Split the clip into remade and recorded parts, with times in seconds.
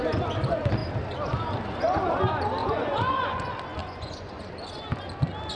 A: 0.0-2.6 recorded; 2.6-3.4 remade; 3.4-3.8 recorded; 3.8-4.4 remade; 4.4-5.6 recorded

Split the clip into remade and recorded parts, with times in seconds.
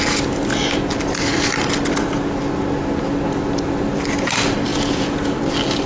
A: 0.0-4.7 recorded; 4.7-5.3 remade; 5.3-5.9 recorded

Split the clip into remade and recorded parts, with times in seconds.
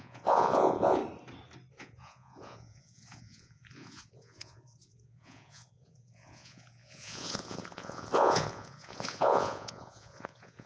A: 0.0-1.0 remade; 1.0-1.7 recorded; 1.7-10.7 remade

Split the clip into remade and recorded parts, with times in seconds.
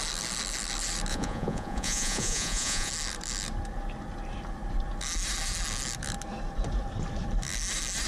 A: 0.0-1.1 recorded; 1.1-2.9 remade; 2.9-8.1 recorded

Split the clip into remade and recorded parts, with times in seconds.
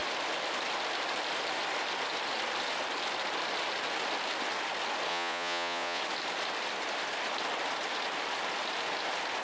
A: 0.0-5.1 recorded; 5.1-6.0 remade; 6.0-9.4 recorded